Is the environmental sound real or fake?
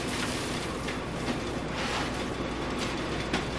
real